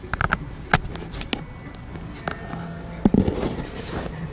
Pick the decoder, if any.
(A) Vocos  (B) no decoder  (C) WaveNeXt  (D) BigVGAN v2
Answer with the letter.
B